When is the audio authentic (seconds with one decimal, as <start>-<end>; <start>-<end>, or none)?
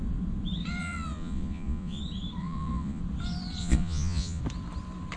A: 0.0-0.8; 2.0-2.4; 3.0-3.6; 4.4-5.2